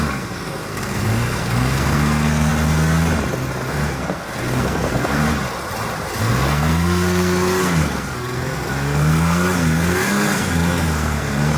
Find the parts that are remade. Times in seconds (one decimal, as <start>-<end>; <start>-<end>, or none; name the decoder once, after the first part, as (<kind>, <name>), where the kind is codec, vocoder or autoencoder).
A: 0.0-2.5 (codec, SNAC); 3.7-5.2; 6.2-11.6